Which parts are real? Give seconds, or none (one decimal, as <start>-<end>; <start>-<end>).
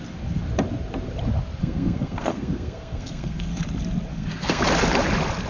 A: 0.0-1.6; 3.6-4.1; 4.6-5.5